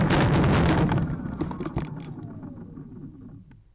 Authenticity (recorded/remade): recorded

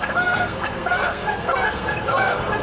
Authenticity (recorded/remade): remade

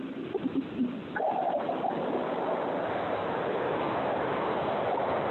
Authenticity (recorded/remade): recorded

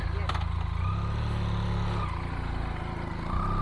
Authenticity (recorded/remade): recorded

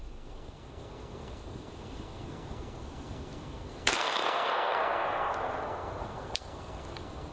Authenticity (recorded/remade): remade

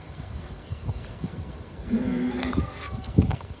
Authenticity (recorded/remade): remade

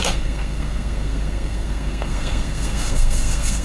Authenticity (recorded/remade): remade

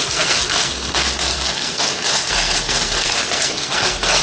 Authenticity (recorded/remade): remade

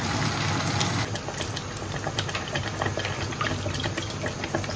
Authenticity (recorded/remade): recorded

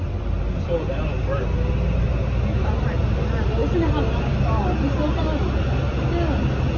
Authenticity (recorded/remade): recorded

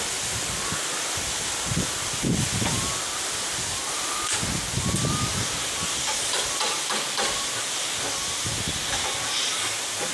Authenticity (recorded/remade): recorded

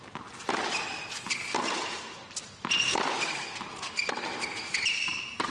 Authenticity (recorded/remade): recorded